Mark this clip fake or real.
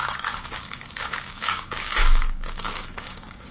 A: fake